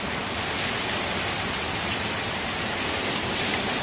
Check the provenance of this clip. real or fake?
real